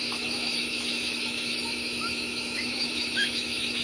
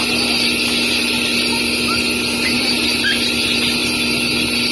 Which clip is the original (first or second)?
second